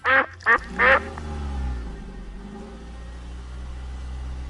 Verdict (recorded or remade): recorded